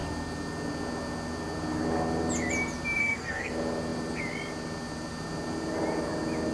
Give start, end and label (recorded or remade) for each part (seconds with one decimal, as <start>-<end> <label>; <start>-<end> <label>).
0.0-3.0 recorded; 3.0-3.5 remade; 3.5-6.5 recorded